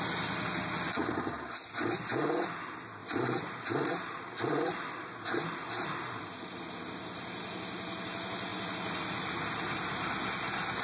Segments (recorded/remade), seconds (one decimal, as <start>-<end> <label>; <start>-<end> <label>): 0.0-1.0 recorded; 1.0-1.6 remade; 1.6-3.0 recorded; 3.0-6.7 remade; 6.7-10.8 recorded

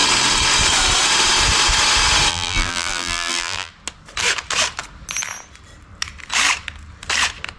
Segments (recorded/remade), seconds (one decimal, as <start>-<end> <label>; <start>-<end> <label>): 0.0-2.3 recorded; 2.3-3.7 remade; 3.7-7.6 recorded

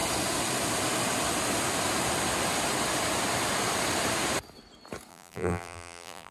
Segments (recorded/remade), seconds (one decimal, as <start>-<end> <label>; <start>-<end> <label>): 0.0-5.1 recorded; 5.1-6.3 remade

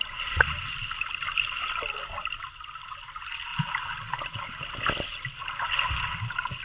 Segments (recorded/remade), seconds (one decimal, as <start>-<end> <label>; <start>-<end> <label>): 0.0-6.6 recorded

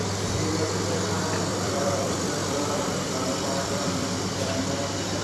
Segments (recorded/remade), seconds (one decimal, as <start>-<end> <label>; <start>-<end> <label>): 0.0-1.5 recorded; 1.5-4.6 remade; 4.6-5.2 recorded

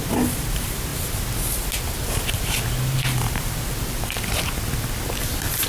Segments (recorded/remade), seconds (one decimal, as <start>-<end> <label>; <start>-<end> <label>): 0.0-0.9 remade; 0.9-4.1 recorded; 4.1-5.7 remade

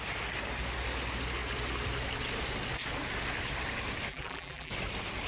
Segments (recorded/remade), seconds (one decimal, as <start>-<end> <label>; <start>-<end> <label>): 0.0-4.1 recorded; 4.1-4.7 remade; 4.7-5.3 recorded

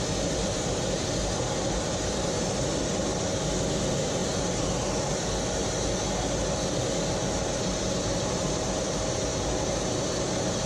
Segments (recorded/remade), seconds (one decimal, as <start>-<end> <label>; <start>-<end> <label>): 0.0-4.2 remade; 4.2-7.8 recorded; 7.8-10.7 remade